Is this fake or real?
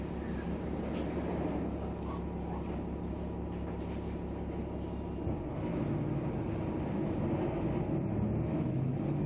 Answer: real